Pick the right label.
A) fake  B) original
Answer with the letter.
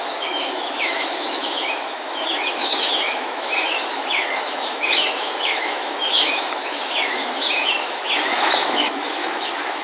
A